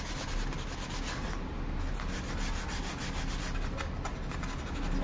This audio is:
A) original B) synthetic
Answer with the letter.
A